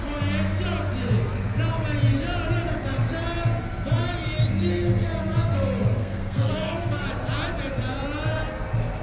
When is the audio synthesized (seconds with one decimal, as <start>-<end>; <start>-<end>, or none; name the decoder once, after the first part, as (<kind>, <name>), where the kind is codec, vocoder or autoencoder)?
6.0-7.1 (codec, SNAC)